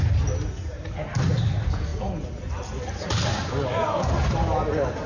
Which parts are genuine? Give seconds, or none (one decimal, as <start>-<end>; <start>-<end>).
0.0-5.1